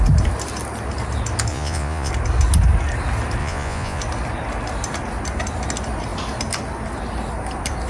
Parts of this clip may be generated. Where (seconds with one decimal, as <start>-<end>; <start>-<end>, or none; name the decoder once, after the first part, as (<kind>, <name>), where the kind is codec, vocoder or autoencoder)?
1.5-2.1 (vocoder, Vocos); 3.4-4.0